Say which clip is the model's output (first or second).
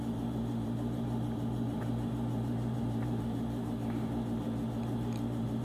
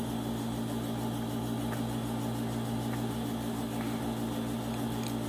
first